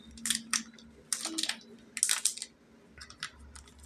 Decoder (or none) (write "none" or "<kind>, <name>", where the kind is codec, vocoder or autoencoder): none